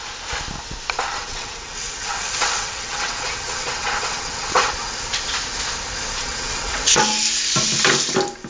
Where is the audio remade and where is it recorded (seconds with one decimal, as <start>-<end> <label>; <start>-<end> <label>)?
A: 0.0-1.2 recorded; 1.2-4.7 remade; 4.7-6.2 recorded; 6.2-7.0 remade; 7.0-8.5 recorded